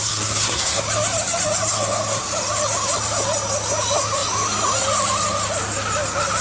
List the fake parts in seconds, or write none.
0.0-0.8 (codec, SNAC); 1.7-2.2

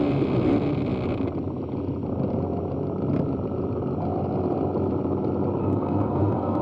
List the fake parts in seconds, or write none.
5.6-6.6 (codec, SNAC)

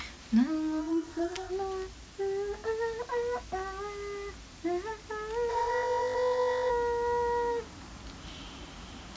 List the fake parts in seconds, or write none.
0.8-1.5 (codec, ZipCodec); 5.5-6.7

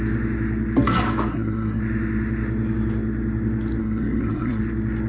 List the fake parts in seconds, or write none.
1.3-1.8 (codec, SNAC); 3.8-4.6